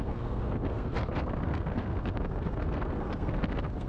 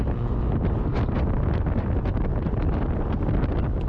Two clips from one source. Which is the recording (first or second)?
second